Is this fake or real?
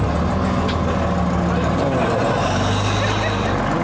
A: real